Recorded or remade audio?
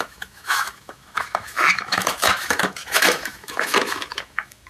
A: remade